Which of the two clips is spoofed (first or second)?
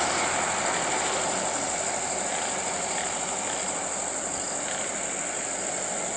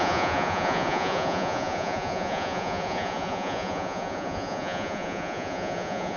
second